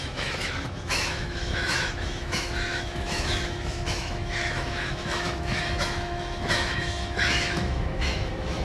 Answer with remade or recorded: remade